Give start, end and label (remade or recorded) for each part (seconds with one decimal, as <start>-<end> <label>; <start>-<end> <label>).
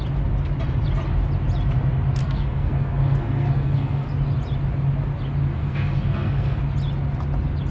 0.0-2.2 recorded; 2.2-4.1 remade; 4.1-5.6 recorded; 5.6-6.6 remade; 6.6-7.7 recorded